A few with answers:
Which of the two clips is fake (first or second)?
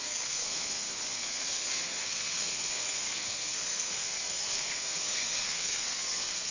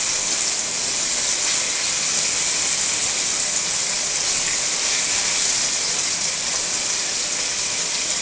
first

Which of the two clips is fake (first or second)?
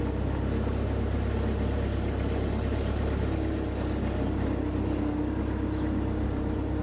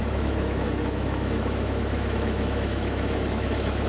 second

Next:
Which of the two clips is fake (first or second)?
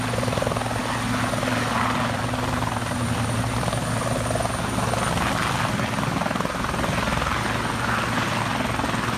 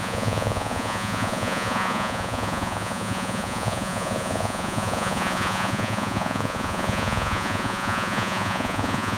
second